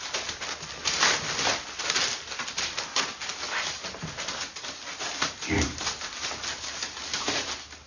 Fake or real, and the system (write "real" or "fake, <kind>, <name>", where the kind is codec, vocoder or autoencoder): real